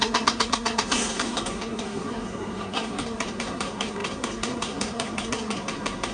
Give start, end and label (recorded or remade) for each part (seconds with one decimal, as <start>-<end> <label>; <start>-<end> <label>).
0.0-6.1 remade

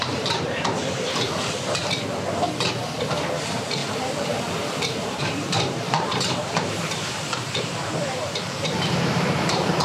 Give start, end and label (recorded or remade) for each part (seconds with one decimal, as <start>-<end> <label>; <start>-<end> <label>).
0.0-0.8 remade; 0.8-3.4 recorded; 3.4-9.8 remade

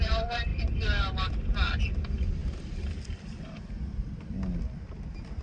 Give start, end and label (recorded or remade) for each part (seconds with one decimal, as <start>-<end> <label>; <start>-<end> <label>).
0.0-5.4 recorded